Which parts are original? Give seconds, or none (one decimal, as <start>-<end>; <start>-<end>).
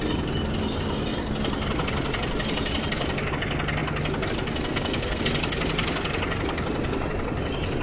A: 0.0-4.7; 5.2-7.8